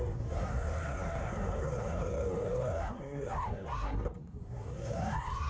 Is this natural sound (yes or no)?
no